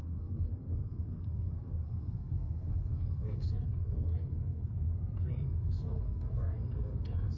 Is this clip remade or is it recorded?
remade